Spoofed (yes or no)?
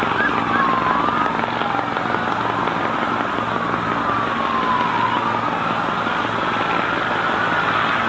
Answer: no